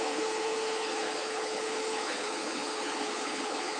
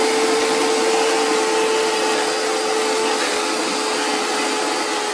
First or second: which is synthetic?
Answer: first